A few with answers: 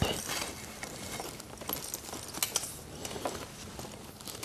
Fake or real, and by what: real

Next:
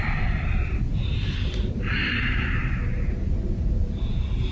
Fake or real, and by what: fake, vocoder, BigVGAN v2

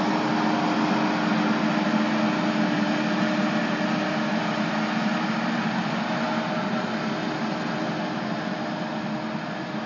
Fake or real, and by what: real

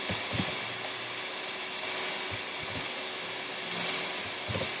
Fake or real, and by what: real